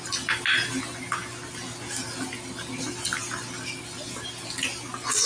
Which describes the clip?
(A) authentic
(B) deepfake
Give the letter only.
A